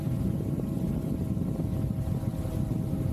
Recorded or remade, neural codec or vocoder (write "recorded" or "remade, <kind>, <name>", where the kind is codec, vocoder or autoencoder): recorded